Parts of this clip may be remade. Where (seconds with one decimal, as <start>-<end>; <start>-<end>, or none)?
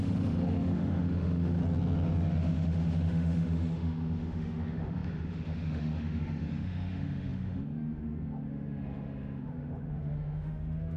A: 0.0-1.6; 2.4-11.0